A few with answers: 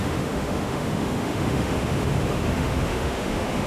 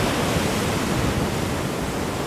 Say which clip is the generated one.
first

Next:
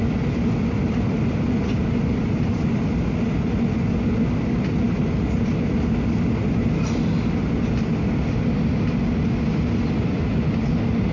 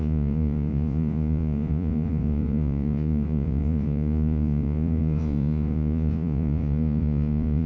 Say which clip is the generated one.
second